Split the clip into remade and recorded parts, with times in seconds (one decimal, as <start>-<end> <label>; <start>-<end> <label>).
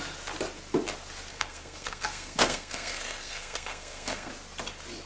0.0-1.3 recorded; 1.3-4.3 remade; 4.3-5.1 recorded